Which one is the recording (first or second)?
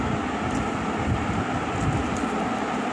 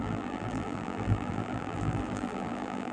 first